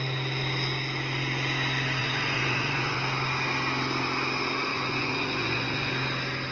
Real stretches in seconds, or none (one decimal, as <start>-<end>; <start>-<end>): 0.0-2.0; 3.0-4.7; 5.9-6.5